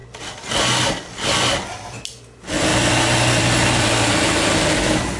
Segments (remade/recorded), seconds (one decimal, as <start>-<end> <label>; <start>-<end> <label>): 0.0-5.2 recorded